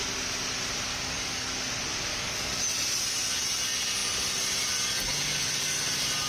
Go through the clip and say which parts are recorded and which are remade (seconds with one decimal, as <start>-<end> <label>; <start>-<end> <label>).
0.0-0.9 recorded; 0.9-1.5 remade; 1.5-2.1 recorded; 2.1-2.6 remade; 2.6-6.3 recorded